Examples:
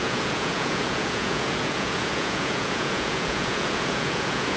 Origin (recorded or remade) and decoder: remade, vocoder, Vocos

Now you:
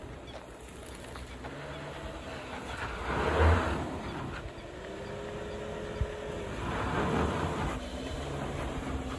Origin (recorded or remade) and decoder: recorded